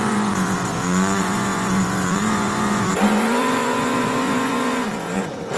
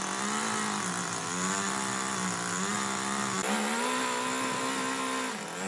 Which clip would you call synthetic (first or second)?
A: first